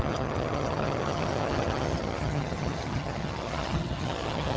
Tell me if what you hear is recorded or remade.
remade